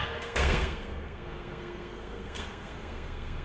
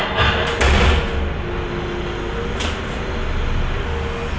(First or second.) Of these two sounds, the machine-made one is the first